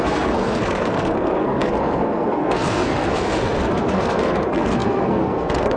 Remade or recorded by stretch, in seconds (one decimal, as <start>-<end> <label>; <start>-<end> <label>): 0.0-5.8 remade